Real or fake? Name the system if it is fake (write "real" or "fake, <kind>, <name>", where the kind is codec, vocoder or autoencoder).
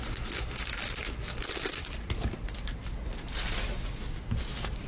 real